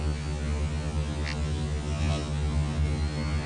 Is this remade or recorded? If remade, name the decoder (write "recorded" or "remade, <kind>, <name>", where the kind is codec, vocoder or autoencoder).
recorded